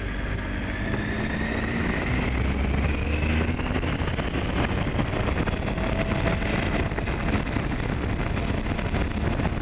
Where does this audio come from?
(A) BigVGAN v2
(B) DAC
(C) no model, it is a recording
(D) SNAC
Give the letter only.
C